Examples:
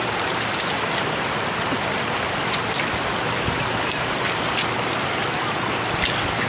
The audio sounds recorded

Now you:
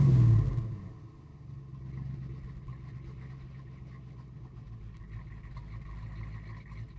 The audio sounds recorded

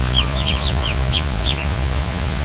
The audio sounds remade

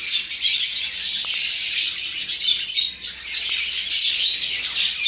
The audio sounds recorded